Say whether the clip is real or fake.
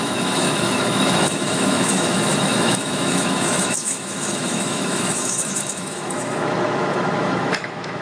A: fake